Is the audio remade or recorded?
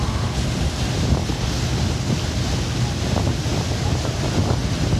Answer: recorded